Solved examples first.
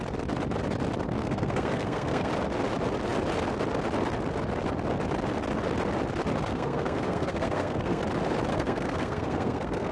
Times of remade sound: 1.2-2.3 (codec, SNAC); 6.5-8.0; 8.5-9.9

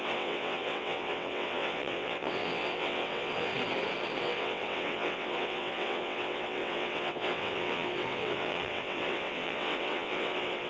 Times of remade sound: 0.0-3.5 (vocoder, WaveNeXt); 4.2-10.7

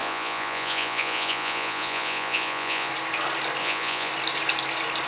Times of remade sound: 0.0-2.9 (vocoder, Vocos); 3.6-4.1

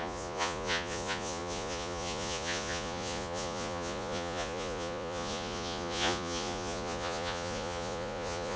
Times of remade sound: 0.0-8.6 (vocoder, Vocos)

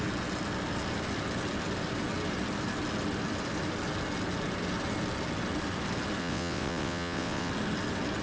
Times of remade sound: 6.2-7.5 (vocoder, WaveNeXt)

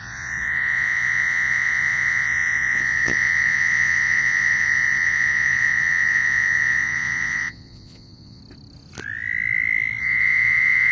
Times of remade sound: 0.0-8.4 (vocoder, Vocos); 10.0-10.9